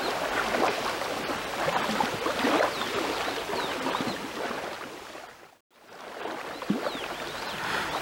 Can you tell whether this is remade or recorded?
recorded